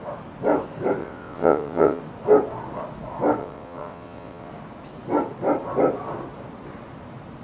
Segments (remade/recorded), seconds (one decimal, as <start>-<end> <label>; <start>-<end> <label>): 0.0-1.0 recorded; 1.0-2.0 remade; 2.0-3.4 recorded; 3.4-4.5 remade; 4.5-7.4 recorded

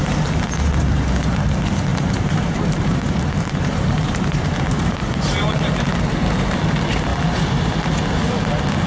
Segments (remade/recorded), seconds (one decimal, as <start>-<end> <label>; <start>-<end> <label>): 0.0-1.9 recorded; 1.9-6.6 remade; 6.6-7.1 recorded; 7.1-7.7 remade; 7.7-8.9 recorded

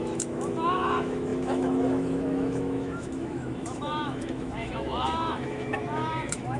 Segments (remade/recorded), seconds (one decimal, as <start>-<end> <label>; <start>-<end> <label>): 0.0-6.6 remade